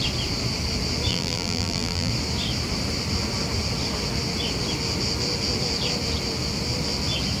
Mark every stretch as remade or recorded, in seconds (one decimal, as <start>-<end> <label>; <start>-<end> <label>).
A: 0.0-1.1 recorded; 1.1-2.1 remade; 2.1-7.4 recorded